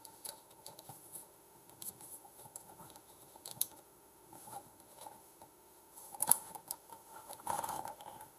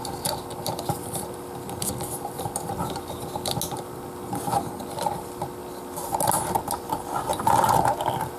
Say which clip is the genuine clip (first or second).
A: second